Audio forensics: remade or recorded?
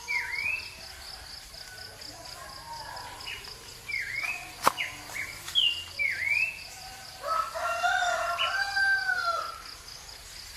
recorded